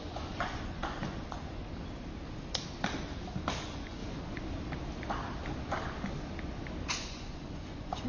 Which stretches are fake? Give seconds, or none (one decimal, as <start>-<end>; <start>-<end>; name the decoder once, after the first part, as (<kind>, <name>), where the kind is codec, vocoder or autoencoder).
0.0-1.6 (vocoder, Vocos); 3.5-4.0; 6.9-8.1